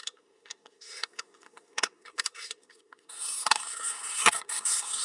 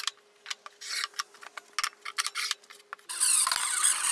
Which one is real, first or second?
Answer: second